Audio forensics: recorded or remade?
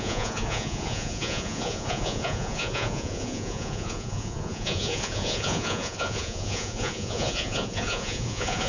remade